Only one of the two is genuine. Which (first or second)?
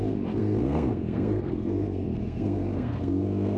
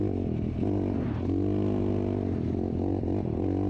second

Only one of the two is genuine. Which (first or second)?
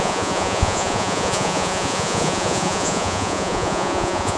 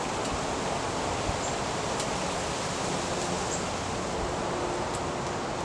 second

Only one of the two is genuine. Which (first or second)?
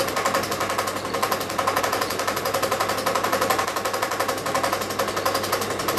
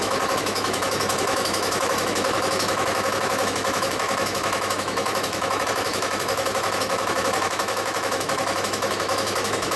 first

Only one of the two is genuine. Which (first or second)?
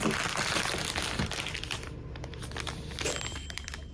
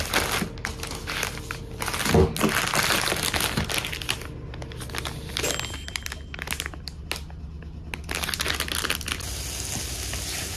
second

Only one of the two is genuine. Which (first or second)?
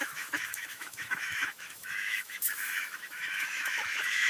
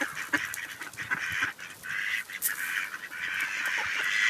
second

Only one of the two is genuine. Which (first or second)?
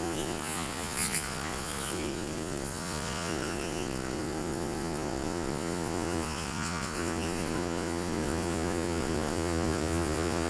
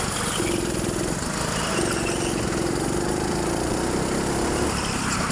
second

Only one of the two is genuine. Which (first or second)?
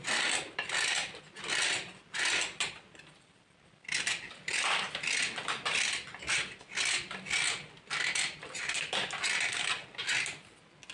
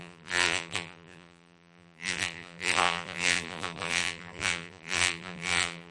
first